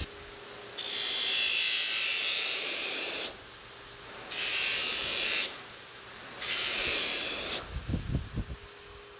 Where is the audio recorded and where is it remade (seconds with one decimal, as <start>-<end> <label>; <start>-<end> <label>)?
0.0-2.1 recorded; 2.1-3.3 remade; 3.3-4.4 recorded; 4.4-7.6 remade; 7.6-9.2 recorded